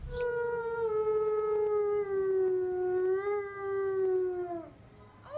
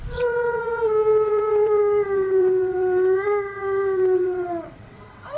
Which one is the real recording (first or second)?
first